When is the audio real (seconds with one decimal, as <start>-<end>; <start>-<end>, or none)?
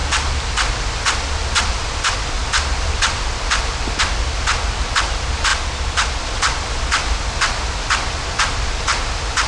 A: 0.0-9.5